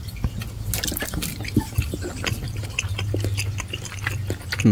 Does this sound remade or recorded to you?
recorded